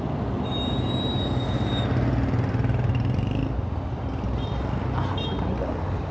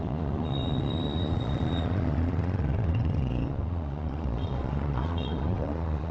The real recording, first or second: first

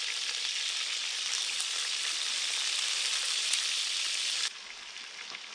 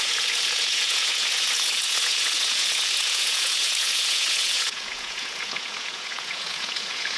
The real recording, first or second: first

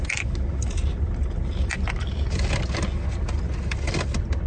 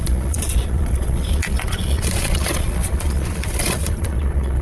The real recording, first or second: first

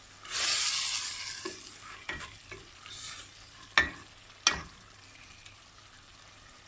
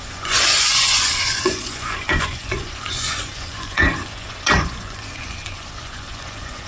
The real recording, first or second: first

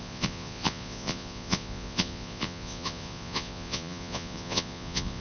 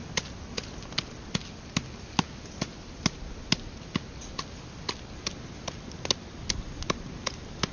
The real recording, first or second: second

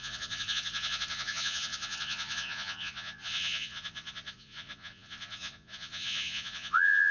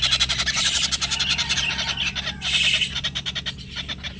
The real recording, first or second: second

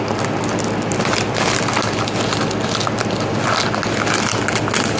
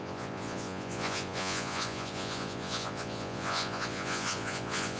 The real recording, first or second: first